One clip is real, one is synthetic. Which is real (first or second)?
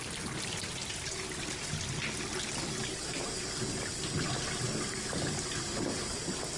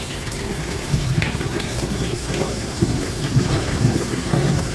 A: first